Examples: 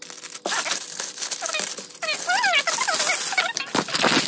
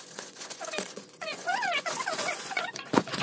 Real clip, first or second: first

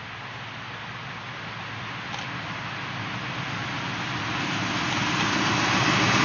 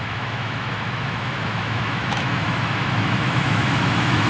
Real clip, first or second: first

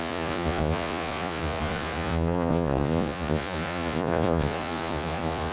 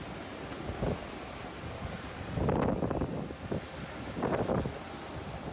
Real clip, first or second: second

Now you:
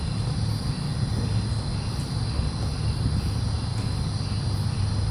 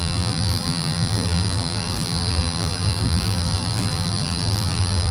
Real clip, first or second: first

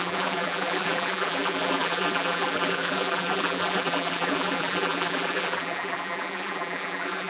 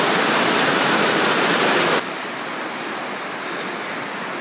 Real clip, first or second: second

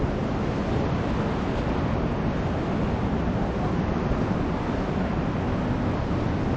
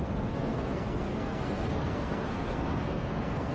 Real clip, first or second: first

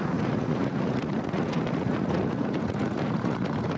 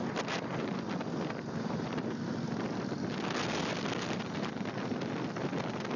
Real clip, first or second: second